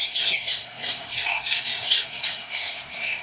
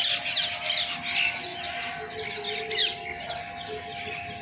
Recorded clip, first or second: second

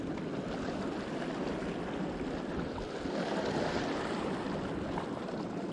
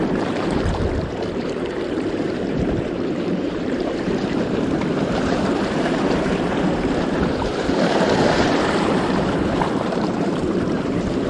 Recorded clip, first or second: first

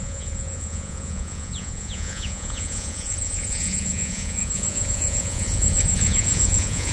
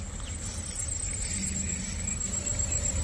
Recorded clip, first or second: second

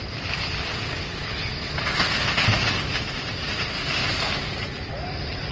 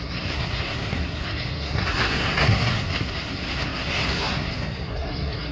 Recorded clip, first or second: first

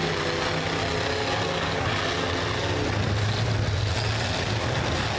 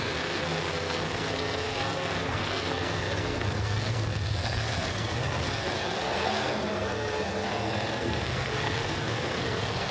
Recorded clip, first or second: first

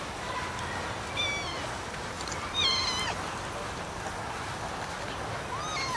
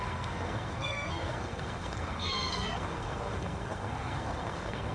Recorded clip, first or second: first